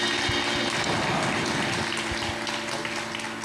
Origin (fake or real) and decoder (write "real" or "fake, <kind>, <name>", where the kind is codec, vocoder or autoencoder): real